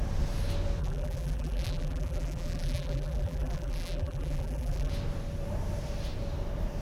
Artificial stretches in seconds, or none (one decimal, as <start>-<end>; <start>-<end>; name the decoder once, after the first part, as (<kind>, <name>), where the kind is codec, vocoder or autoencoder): 0.8-4.9 (vocoder, BigVGAN v2)